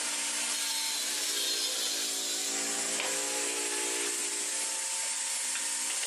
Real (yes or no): yes